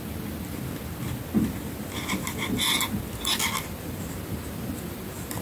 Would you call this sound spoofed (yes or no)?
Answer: no